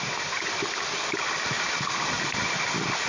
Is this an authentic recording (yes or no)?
yes